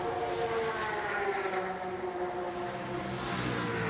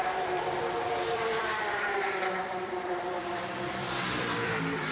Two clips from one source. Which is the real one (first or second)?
first